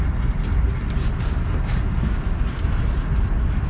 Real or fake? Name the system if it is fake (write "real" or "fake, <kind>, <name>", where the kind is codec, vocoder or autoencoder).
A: real